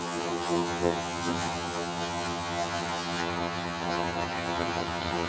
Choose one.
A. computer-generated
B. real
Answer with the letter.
A